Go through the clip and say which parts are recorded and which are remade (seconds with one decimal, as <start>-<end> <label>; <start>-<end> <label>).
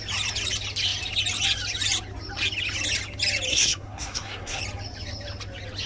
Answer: 0.0-3.5 recorded; 3.5-4.6 remade; 4.6-5.9 recorded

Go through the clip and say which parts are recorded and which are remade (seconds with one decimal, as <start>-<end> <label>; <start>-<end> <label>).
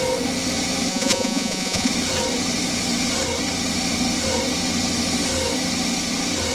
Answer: 0.0-0.9 recorded; 0.9-1.9 remade; 1.9-6.5 recorded